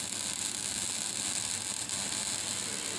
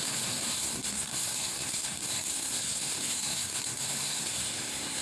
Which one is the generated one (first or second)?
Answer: second